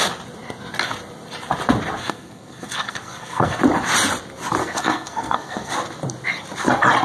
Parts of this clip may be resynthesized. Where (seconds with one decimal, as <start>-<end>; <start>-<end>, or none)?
2.0-3.6; 4.6-5.7